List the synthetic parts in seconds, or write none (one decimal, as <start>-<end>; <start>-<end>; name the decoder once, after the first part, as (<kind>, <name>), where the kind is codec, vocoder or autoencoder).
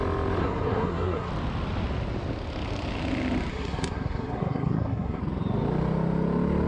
0.4-1.3 (codec, SNAC); 3.5-5.2